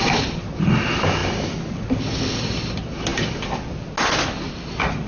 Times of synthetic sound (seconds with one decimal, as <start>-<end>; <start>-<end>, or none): none